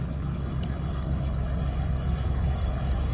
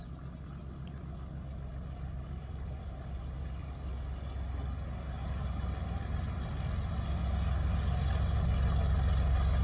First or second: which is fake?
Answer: first